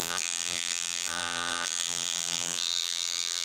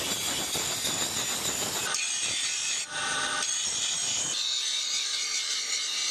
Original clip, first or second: second